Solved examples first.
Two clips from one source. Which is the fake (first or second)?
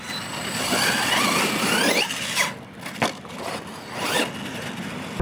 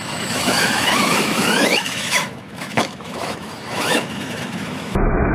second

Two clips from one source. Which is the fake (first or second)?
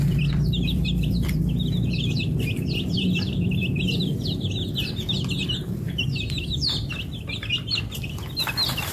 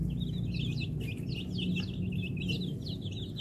first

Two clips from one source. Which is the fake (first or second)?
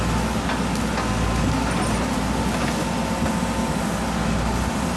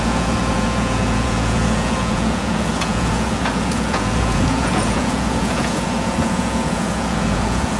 second